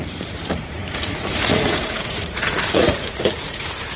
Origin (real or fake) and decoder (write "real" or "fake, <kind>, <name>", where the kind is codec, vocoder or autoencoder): fake, vocoder, Vocos